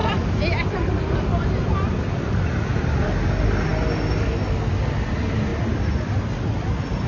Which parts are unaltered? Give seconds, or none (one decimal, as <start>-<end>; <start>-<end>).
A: 0.0-7.1